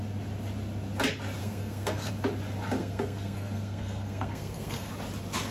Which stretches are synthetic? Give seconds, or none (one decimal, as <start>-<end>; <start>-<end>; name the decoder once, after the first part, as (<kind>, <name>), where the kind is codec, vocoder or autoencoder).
1.4-2.1 (codec, SNAC); 2.8-4.9